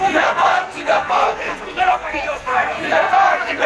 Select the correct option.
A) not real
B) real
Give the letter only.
A